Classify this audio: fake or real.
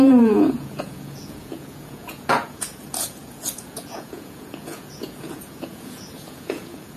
fake